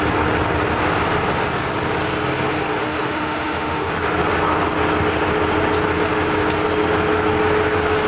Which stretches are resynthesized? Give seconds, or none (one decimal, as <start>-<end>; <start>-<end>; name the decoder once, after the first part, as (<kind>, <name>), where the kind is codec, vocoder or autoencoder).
2.8-3.9 (autoencoder, DAC-VAE)